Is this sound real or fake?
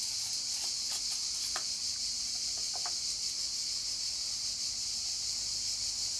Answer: real